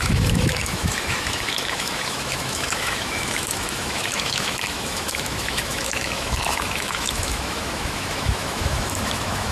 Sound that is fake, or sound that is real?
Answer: fake